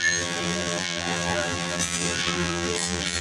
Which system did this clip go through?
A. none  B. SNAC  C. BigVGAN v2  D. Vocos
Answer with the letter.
C